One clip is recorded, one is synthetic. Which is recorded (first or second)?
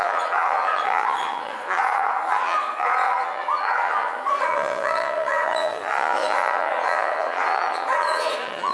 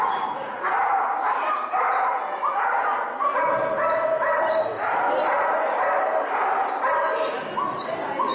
second